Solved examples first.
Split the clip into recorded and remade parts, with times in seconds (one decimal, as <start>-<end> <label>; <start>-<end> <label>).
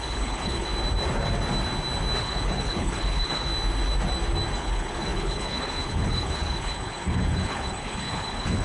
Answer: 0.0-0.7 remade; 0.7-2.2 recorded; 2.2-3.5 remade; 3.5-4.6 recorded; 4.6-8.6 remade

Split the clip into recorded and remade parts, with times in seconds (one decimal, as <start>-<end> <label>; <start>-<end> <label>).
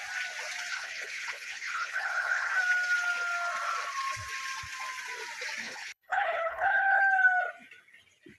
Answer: 0.0-0.7 recorded; 0.7-2.5 remade; 2.5-5.6 recorded; 5.6-7.0 remade; 7.0-8.4 recorded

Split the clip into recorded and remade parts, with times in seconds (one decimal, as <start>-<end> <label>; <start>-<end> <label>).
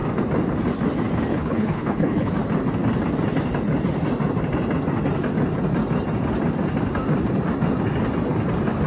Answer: 0.0-1.3 recorded; 1.3-2.3 remade; 2.3-8.9 recorded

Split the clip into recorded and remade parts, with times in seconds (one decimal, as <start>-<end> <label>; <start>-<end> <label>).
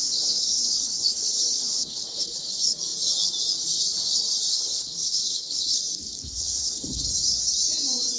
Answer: 0.0-2.5 remade; 2.5-4.5 recorded; 4.5-5.8 remade; 5.8-6.2 recorded; 6.2-7.0 remade; 7.0-8.2 recorded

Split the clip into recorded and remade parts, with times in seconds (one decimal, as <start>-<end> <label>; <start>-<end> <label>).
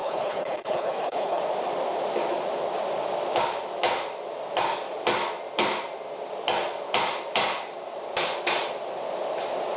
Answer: 0.0-1.4 remade; 1.4-9.8 recorded